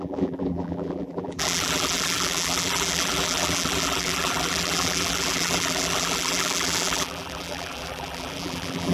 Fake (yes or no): yes